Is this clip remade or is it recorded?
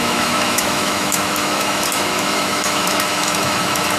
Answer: remade